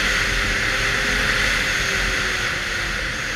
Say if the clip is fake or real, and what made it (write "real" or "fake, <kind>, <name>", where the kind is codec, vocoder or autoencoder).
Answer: real